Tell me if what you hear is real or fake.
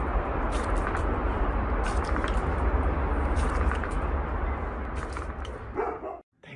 fake